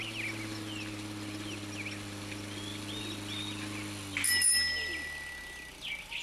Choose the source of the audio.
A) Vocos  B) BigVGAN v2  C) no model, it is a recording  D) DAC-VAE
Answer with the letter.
C